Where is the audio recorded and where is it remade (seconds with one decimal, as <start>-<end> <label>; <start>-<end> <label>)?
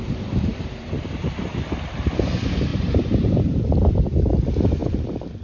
0.0-0.5 recorded; 0.5-1.2 remade; 1.2-2.7 recorded; 2.7-3.6 remade; 3.6-5.4 recorded